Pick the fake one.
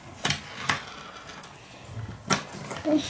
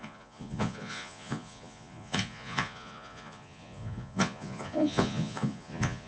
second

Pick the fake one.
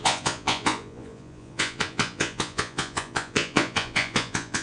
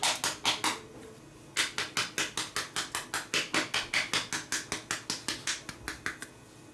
first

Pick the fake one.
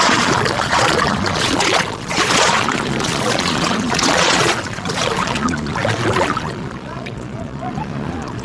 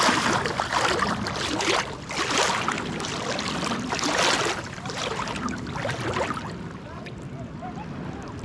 first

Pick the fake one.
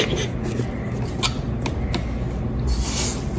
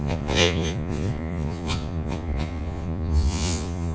second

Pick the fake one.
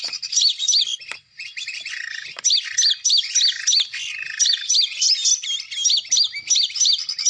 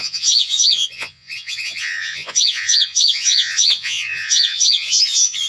second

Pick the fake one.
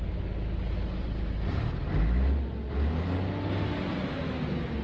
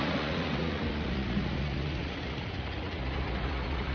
second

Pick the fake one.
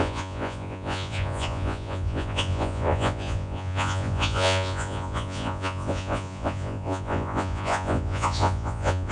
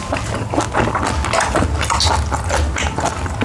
first